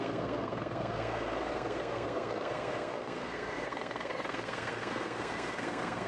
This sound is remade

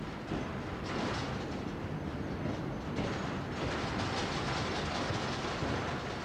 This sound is recorded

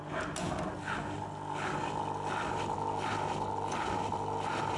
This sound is recorded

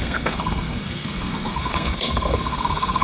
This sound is remade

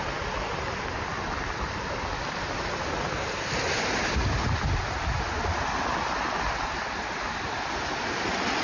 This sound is recorded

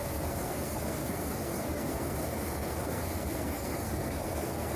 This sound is remade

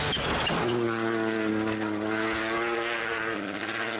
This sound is recorded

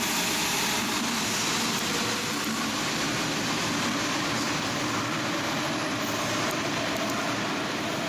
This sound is recorded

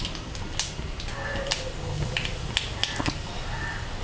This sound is recorded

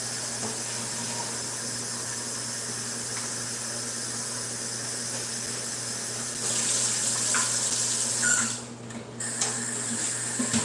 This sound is recorded